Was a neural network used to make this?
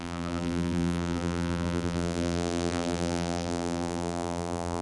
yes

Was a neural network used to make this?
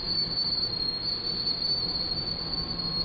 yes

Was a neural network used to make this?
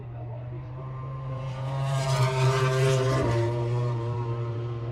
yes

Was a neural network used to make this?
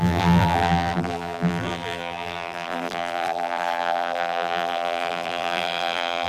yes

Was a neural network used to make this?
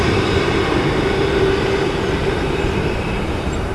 yes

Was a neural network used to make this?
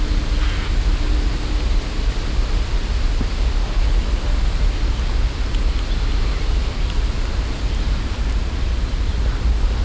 no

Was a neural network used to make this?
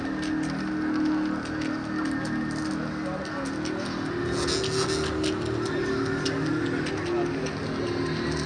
no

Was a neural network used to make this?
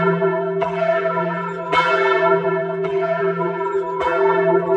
yes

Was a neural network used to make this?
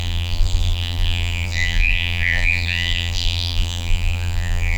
yes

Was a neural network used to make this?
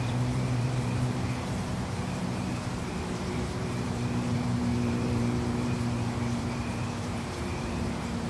yes